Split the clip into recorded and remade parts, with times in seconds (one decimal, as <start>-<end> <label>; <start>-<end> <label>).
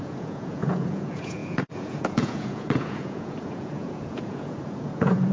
0.0-5.3 remade